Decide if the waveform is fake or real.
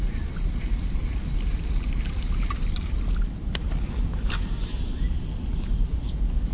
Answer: real